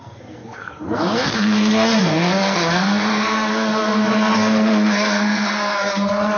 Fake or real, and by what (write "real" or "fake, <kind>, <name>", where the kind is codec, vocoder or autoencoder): fake, codec, SNAC